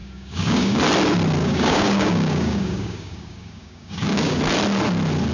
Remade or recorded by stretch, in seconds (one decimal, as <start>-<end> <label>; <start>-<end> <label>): 0.0-0.8 remade; 0.8-1.4 recorded; 1.4-4.4 remade; 4.4-5.3 recorded